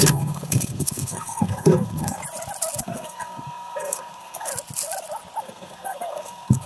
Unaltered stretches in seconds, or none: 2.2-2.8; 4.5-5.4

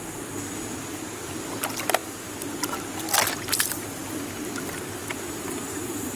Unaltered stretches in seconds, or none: 0.0-2.0; 3.8-5.0

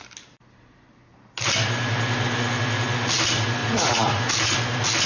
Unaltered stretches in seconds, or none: 0.0-3.6; 4.2-5.1

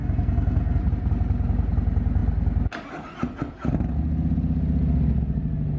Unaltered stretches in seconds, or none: 0.8-5.8

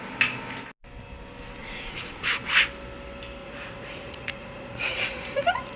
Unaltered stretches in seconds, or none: 0.0-1.6; 2.6-3.4

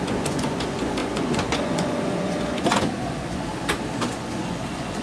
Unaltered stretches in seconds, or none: 3.5-4.1

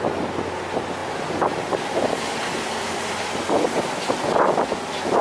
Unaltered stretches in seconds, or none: 0.0-5.2